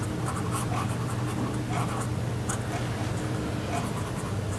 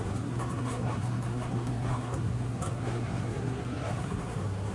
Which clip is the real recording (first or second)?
first